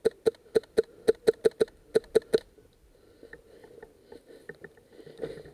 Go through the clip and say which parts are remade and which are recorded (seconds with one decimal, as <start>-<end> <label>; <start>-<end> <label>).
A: 0.0-5.5 recorded